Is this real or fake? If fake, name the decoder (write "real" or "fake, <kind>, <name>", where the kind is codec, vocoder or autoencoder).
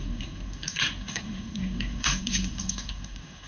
fake, codec, SNAC